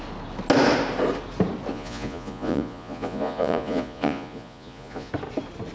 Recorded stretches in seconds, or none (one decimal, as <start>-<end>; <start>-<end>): 0.0-1.7; 5.1-5.7